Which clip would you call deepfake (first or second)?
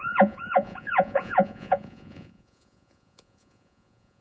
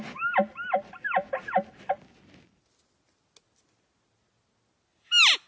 first